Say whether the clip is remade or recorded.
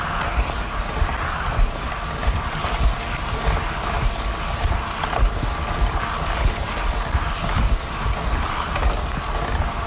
recorded